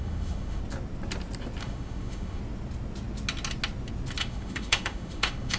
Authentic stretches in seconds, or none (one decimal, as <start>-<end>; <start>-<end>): 0.6-1.6; 2.4-4.2